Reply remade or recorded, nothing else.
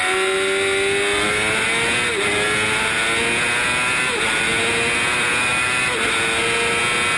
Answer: recorded